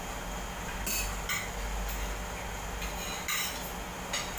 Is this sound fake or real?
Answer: real